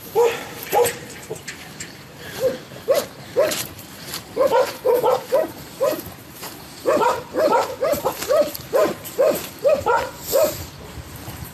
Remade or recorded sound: remade